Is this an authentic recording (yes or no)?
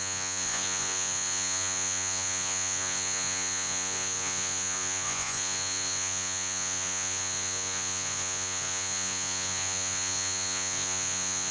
no